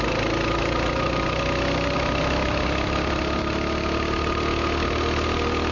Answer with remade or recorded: recorded